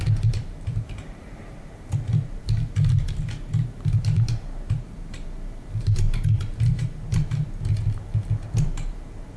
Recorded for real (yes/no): no